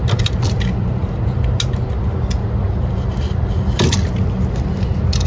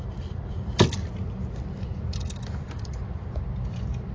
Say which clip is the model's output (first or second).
second